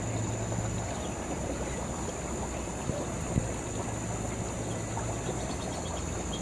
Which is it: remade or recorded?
recorded